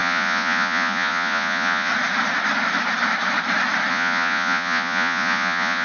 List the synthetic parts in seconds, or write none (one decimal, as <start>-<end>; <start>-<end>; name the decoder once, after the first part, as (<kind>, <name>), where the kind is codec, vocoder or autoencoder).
0.0-1.9 (vocoder, Vocos); 3.9-5.8